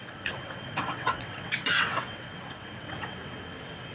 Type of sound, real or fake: fake